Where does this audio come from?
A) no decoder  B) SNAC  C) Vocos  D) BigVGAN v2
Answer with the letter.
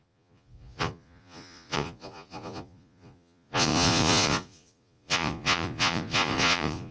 C